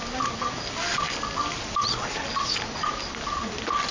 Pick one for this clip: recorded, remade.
recorded